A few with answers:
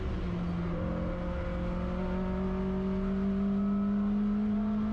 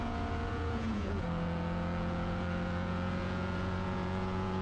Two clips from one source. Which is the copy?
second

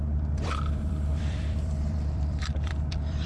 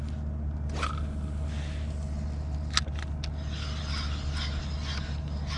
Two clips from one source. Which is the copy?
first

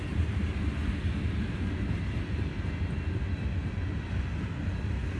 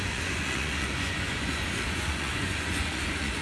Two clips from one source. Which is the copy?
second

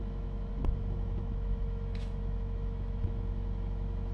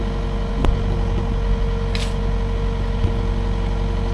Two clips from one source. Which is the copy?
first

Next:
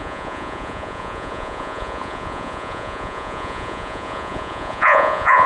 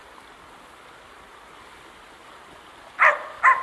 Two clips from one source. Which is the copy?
first